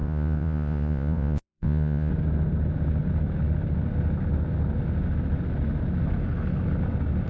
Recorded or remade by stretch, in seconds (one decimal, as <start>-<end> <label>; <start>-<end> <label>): 0.0-2.1 remade; 2.1-7.3 recorded